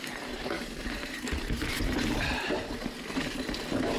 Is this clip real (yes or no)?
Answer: yes